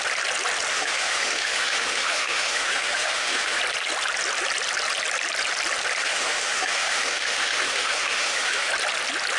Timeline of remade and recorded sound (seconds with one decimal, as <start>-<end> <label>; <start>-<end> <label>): 0.0-0.7 recorded; 0.7-3.6 remade; 3.6-6.0 recorded; 6.0-8.7 remade; 8.7-9.4 recorded